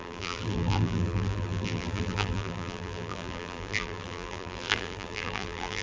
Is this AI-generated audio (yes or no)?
yes